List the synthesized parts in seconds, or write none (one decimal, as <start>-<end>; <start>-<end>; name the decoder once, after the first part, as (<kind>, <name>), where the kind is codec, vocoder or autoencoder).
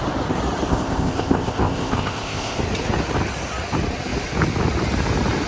0.7-2.6 (codec, ZipCodec)